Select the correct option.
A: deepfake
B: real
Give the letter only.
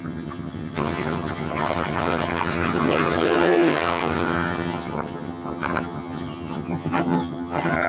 A